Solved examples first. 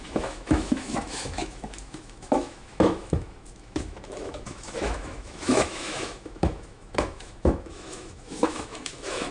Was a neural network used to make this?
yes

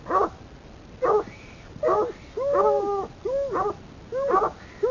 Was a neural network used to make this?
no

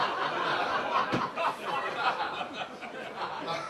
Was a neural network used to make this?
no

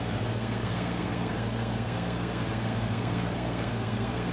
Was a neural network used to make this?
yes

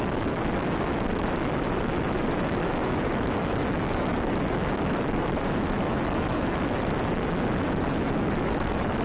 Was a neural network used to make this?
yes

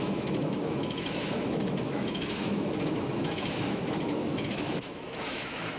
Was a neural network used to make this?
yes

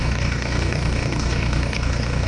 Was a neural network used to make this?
yes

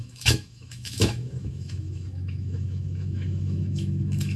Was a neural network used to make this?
yes